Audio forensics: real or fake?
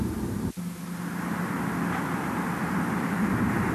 real